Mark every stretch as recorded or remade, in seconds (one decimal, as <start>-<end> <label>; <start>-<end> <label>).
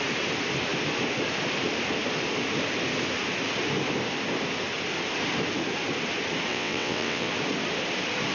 0.0-6.5 recorded; 6.5-7.3 remade; 7.3-8.3 recorded